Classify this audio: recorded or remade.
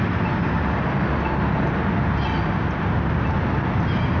recorded